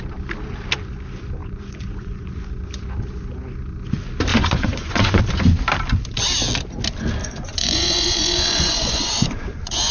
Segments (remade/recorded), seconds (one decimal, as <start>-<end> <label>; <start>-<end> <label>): 0.0-1.4 recorded; 1.4-2.7 remade; 2.7-4.3 recorded; 4.3-5.2 remade; 5.2-7.2 recorded; 7.2-9.9 remade

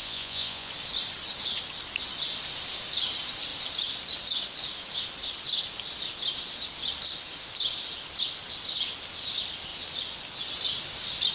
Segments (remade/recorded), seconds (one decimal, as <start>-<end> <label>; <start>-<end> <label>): 0.0-0.7 remade; 0.7-11.3 recorded